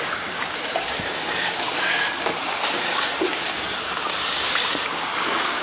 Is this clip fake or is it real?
fake